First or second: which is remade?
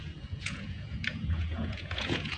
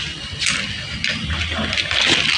first